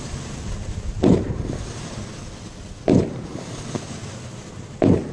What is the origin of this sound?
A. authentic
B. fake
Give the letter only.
A